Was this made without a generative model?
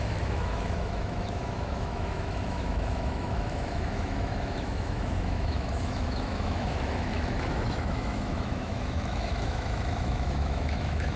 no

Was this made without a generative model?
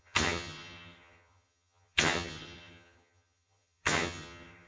no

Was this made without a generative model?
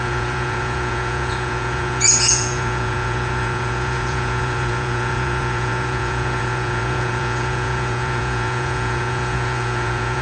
no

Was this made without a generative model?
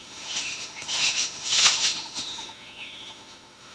no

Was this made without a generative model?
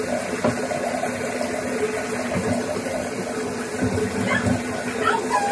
yes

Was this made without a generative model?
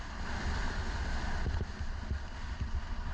yes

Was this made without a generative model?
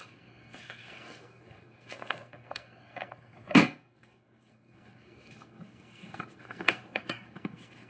no